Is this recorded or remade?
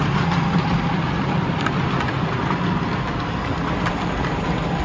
recorded